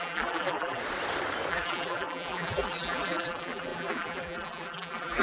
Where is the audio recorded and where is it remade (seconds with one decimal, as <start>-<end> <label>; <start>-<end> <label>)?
0.0-0.8 remade; 0.8-1.5 recorded; 1.5-5.2 remade